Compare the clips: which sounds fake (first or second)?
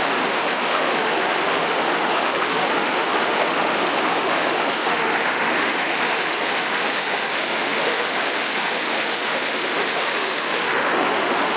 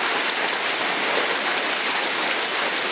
first